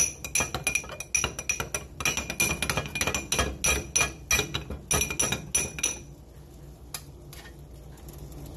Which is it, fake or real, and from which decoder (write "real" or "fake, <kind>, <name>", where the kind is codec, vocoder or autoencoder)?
real